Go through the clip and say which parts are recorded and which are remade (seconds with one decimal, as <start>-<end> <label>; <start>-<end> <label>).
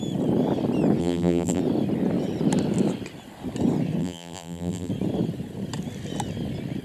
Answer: 0.0-1.0 recorded; 1.0-1.6 remade; 1.6-4.0 recorded; 4.0-4.9 remade; 4.9-6.8 recorded